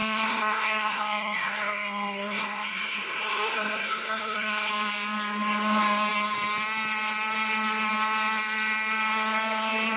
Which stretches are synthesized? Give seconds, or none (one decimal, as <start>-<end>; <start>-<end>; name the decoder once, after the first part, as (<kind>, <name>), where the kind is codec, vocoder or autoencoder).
0.0-4.7 (codec, SNAC)

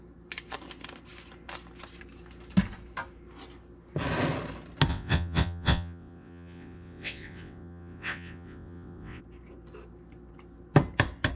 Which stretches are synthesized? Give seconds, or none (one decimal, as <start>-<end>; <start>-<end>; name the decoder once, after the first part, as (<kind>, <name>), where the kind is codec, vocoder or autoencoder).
4.9-9.2 (vocoder, WaveNeXt)

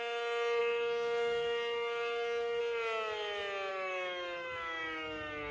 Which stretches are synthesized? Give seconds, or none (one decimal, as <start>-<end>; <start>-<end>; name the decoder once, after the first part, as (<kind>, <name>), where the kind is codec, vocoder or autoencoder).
0.6-2.6 (codec, DAC); 3.7-5.5

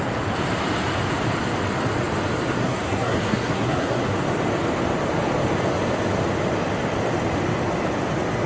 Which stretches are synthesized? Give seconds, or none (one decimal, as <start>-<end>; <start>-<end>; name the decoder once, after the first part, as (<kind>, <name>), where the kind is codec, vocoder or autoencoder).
2.6-4.0 (codec, SNAC)

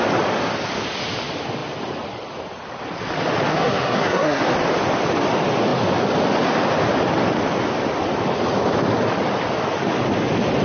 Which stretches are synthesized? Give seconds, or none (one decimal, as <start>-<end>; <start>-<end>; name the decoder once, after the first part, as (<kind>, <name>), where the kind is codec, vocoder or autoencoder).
3.5-4.4 (codec, SNAC)

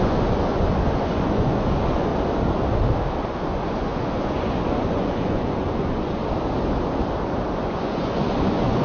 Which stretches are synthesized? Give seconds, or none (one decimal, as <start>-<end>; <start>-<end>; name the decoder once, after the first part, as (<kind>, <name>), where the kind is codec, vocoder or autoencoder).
0.0-2.1 (vocoder, Vocos); 3.4-6.2; 7.5-8.8

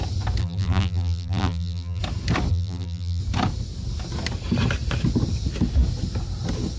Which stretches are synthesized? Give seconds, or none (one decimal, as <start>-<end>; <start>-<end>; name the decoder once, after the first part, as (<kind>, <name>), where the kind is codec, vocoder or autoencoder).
0.4-2.0 (vocoder, BigVGAN v2); 2.5-3.2

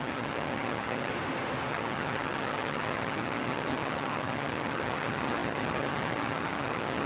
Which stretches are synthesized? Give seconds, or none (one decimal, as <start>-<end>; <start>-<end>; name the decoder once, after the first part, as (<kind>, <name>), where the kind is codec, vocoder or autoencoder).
0.0-1.1 (vocoder, HiFi-GAN); 1.7-7.1